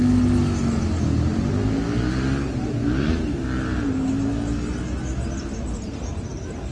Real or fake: real